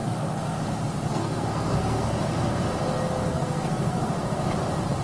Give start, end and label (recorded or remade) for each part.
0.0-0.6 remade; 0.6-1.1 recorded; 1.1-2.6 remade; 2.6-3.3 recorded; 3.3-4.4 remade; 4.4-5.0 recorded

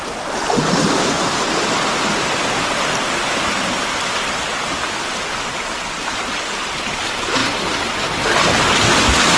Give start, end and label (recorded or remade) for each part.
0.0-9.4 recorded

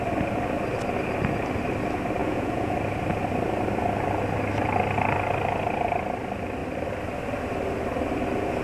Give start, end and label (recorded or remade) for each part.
0.0-2.2 recorded; 2.2-2.7 remade; 2.7-8.6 recorded

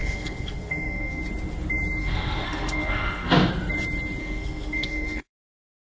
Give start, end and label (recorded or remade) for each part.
0.0-1.2 remade; 1.2-2.0 recorded; 2.0-3.5 remade; 3.5-4.2 recorded; 4.2-5.3 remade; 5.3-5.8 recorded